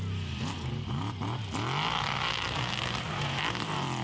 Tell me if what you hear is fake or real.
real